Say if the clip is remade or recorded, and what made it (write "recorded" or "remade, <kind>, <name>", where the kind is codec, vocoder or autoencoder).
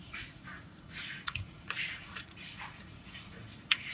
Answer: remade, vocoder, Vocos